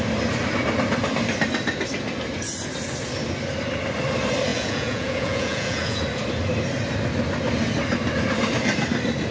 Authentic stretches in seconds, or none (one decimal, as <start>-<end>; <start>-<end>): 0.0-4.5; 6.0-9.3